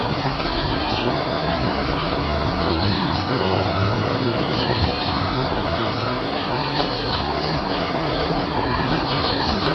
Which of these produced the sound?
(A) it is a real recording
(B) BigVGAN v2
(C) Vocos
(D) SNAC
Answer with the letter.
D